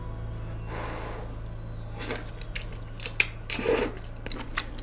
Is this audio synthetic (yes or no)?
no